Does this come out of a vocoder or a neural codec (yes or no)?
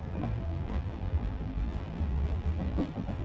yes